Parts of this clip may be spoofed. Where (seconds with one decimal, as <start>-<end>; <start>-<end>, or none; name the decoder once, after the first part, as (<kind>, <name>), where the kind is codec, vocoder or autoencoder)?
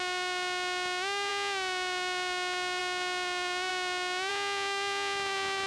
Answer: none